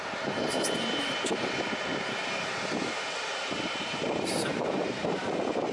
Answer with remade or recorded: remade